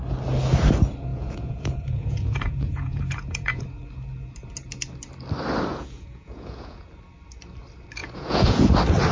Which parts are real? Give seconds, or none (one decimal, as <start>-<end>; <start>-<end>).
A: 0.0-1.1; 3.6-5.7; 6.9-8.0; 8.7-9.1